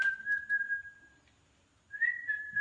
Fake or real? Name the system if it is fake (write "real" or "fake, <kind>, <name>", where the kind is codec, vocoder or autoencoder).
real